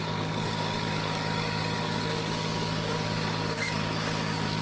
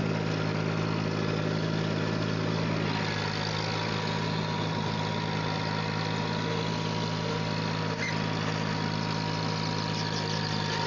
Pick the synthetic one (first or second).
first